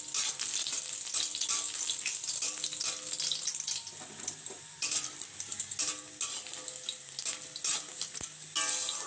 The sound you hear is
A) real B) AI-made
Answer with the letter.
A